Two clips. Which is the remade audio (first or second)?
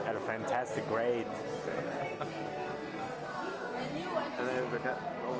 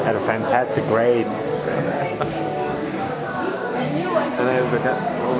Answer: second